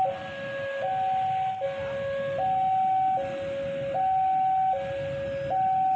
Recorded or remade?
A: recorded